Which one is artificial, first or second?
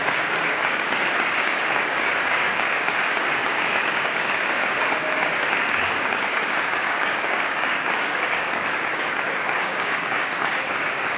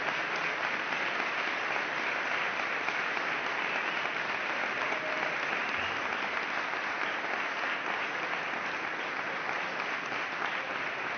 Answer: first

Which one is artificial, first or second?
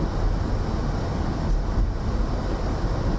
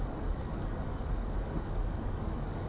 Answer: second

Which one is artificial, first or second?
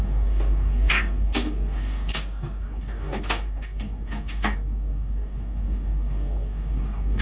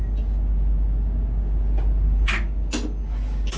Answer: first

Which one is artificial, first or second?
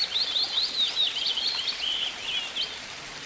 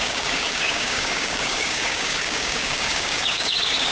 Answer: second